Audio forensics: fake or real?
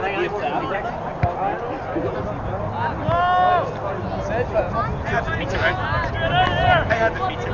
real